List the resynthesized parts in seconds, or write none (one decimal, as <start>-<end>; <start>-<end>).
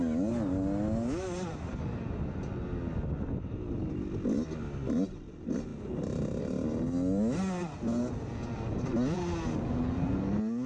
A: none